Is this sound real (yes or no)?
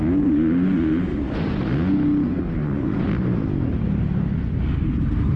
yes